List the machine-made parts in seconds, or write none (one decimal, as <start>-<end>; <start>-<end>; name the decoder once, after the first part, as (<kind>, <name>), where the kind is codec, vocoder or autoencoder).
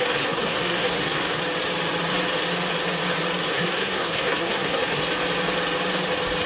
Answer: 0.0-1.4 (codec, SNAC); 3.5-5.0